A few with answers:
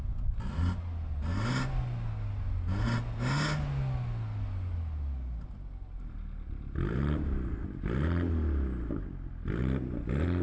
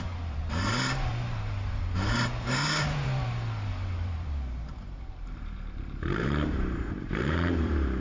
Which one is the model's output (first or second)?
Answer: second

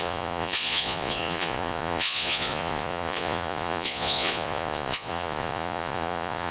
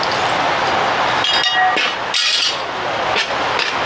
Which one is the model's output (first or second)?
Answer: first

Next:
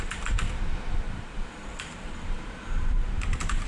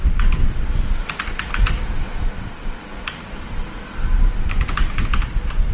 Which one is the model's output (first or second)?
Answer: first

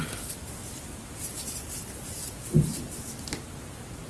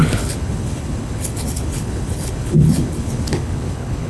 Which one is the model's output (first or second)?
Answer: second